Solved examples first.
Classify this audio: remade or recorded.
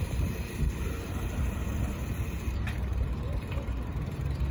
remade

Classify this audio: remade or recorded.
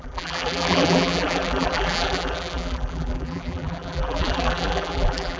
remade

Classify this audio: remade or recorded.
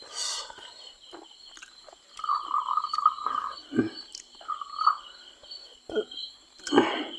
recorded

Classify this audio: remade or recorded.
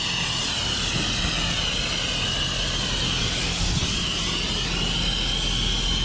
recorded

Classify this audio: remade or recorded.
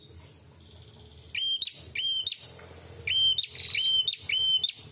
recorded